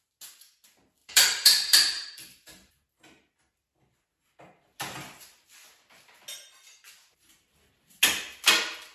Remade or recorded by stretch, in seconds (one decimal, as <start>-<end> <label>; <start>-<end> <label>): 0.0-1.0 recorded; 1.0-2.7 remade; 2.7-8.9 recorded